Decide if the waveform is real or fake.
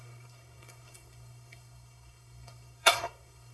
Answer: fake